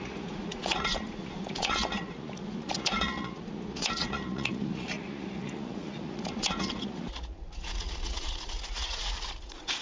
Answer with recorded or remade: remade